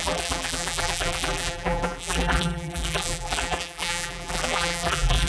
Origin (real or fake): fake